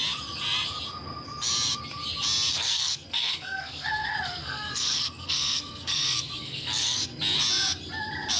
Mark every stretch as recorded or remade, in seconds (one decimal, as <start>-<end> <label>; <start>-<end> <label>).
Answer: 0.0-2.5 recorded; 2.5-7.2 remade; 7.2-8.4 recorded